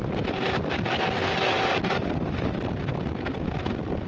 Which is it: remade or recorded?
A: recorded